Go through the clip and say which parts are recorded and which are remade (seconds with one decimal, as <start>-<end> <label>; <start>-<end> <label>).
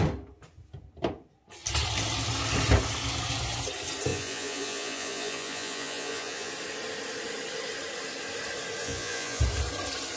0.0-4.1 recorded; 4.1-6.5 remade; 6.5-8.8 recorded; 8.8-9.4 remade; 9.4-10.2 recorded